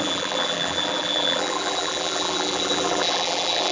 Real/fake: fake